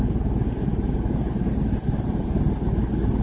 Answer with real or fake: real